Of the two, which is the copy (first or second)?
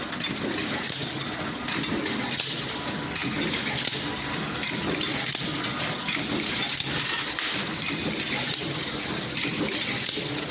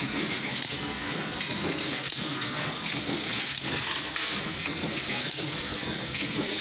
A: second